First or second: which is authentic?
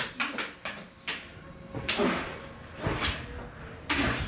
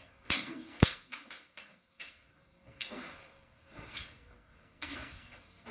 first